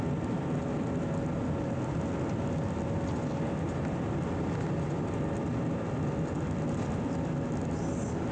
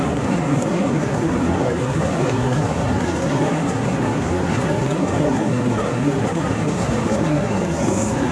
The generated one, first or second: second